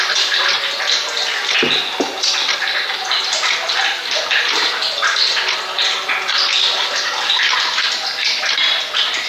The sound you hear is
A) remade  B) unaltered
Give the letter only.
B